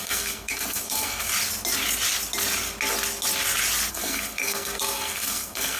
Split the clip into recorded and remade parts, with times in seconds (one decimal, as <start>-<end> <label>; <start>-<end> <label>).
0.0-1.3 remade; 1.3-3.9 recorded; 3.9-5.8 remade

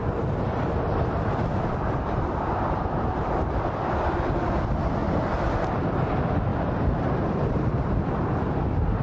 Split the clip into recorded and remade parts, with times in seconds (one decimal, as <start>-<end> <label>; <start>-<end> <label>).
0.0-5.0 remade; 5.0-5.8 recorded; 5.8-9.0 remade